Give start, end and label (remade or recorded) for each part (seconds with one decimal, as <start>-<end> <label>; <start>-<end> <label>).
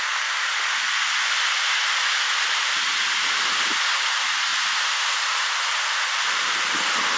0.0-7.2 recorded